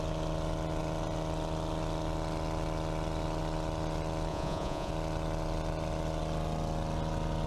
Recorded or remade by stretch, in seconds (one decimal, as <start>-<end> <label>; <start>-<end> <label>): 0.0-4.3 recorded; 4.3-4.9 remade; 4.9-7.5 recorded